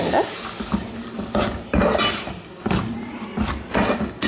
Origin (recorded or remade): recorded